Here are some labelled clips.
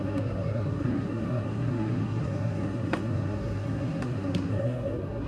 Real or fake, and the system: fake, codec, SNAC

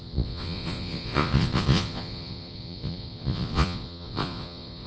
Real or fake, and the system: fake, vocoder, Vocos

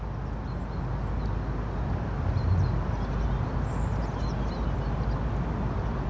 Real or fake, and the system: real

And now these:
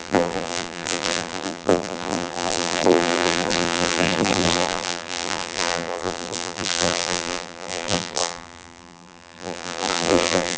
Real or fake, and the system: fake, vocoder, BigVGAN v2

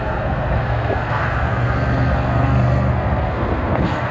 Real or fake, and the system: fake, codec, SNAC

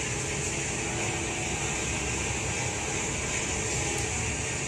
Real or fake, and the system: real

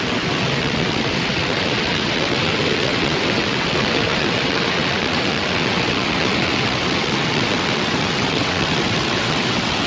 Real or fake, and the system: fake, vocoder, WaveNeXt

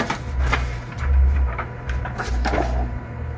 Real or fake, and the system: fake, vocoder, BigVGAN v2